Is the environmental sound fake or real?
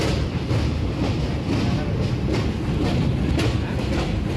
real